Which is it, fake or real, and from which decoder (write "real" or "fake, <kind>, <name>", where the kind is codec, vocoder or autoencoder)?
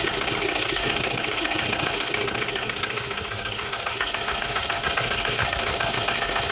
fake, codec, SNAC